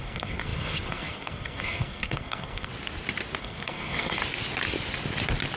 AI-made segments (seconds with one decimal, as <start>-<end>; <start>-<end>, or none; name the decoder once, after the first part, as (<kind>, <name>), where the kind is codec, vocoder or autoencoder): 0.0-2.7 (codec, SNAC); 3.4-4.2